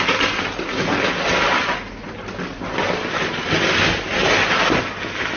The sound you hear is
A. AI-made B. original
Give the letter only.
B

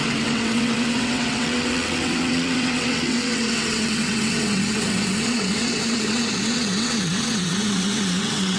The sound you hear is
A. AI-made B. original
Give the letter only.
A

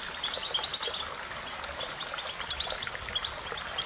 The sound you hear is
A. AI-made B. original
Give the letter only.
B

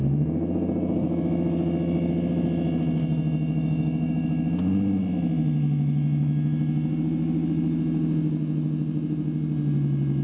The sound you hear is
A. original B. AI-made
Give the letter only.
A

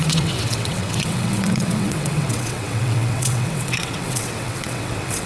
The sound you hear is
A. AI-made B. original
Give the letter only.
A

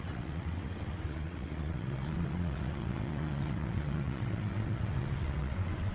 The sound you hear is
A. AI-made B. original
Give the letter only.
A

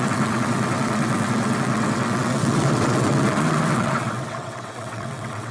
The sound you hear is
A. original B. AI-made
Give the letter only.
B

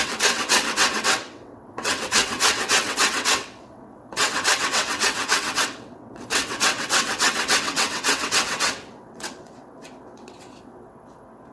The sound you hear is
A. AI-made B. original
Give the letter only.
A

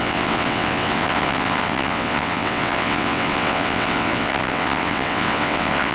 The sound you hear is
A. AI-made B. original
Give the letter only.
A